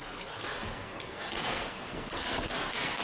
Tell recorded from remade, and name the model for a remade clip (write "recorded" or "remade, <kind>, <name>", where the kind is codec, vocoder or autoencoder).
remade, codec, SNAC